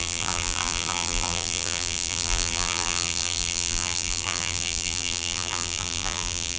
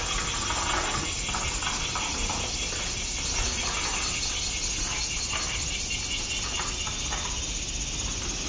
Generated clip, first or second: first